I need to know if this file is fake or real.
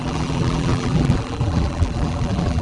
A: fake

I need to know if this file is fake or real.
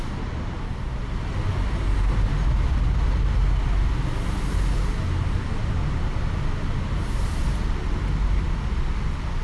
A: real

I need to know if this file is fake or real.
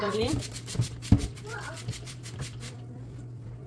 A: fake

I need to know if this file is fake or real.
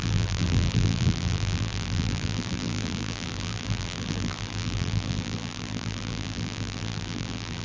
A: fake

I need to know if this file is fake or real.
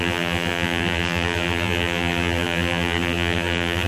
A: fake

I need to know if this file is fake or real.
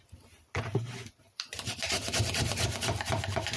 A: fake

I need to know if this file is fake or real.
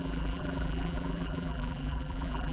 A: fake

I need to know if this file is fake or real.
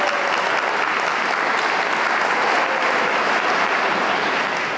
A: real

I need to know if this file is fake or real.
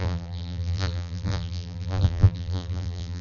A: fake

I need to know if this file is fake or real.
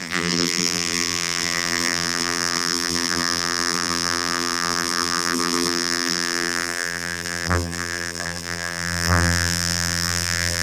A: fake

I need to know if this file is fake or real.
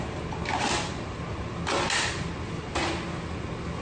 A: real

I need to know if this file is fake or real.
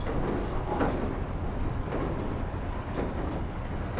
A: real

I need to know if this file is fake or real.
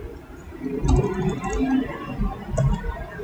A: real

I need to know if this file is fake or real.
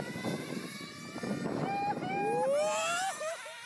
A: real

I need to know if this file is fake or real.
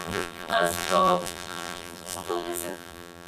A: fake